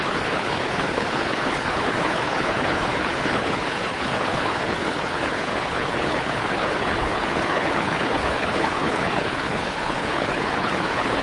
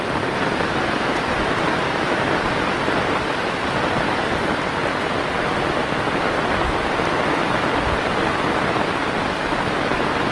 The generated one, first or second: first